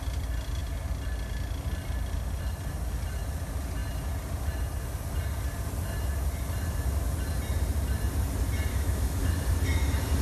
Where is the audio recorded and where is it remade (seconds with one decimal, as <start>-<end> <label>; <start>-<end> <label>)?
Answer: 0.0-8.7 recorded; 8.7-9.2 remade; 9.2-10.2 recorded